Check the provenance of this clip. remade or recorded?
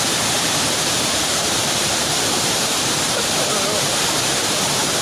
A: remade